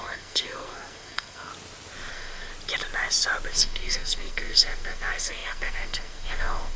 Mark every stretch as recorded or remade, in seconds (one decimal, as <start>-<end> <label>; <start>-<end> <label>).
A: 0.0-1.5 remade; 1.5-2.1 recorded; 2.1-2.5 remade; 2.5-3.5 recorded; 3.5-6.8 remade

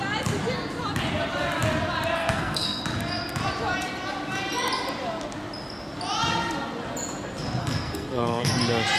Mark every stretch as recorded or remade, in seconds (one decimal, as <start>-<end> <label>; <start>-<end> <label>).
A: 0.0-2.2 recorded; 2.2-2.8 remade; 2.8-7.6 recorded; 7.6-8.5 remade; 8.5-9.0 recorded